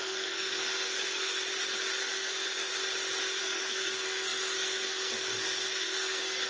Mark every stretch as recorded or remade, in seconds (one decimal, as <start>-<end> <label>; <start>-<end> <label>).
0.0-1.4 remade; 1.4-2.0 recorded; 2.0-2.7 remade; 2.7-3.4 recorded; 3.4-6.5 remade